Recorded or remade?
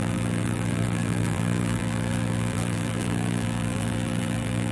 remade